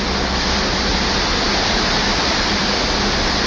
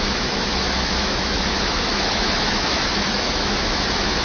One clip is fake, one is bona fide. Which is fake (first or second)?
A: second